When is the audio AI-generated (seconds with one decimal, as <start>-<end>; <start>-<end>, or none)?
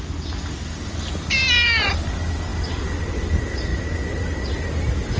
none